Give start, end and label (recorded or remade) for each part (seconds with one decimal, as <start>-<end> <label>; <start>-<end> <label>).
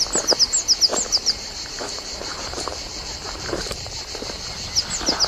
0.0-0.9 recorded; 0.9-4.1 remade; 4.1-5.3 recorded